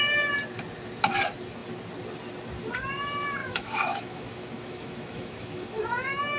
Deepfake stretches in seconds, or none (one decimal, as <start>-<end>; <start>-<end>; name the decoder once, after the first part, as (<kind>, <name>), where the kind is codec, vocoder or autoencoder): 3.4-6.4 (autoencoder, DAC-VAE)